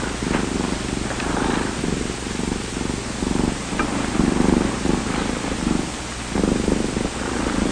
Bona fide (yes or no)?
yes